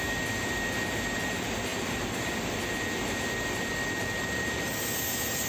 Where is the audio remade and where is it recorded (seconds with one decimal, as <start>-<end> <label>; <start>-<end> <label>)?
0.0-5.5 recorded